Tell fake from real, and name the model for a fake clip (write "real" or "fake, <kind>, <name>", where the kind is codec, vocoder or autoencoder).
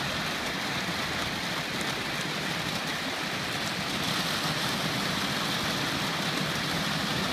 real